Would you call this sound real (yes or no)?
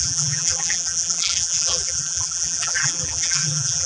no